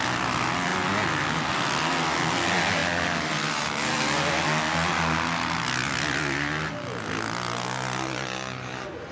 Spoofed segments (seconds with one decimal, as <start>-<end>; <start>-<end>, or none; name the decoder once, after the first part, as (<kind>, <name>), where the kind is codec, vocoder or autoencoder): none